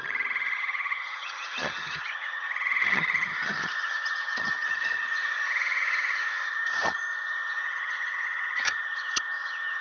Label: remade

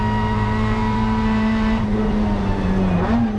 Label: remade